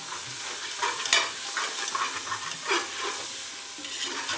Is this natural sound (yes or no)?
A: yes